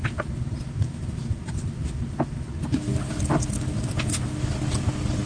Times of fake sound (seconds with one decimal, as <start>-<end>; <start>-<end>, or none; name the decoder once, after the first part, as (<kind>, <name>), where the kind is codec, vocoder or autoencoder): 0.0-3.2 (vocoder, BigVGAN v2)